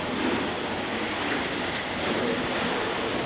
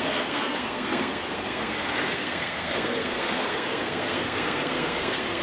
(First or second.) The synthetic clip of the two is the second